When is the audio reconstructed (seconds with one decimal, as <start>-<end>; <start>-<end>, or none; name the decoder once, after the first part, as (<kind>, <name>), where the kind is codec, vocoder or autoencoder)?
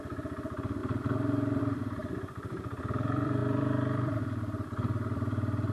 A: 0.0-5.7 (vocoder, BigVGAN v2)